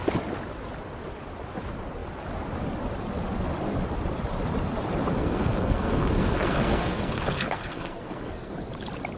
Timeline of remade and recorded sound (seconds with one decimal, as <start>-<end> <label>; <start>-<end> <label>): 0.0-5.1 recorded; 5.1-8.5 remade; 8.5-9.2 recorded